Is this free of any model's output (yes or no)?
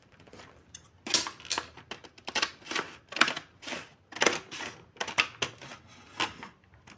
yes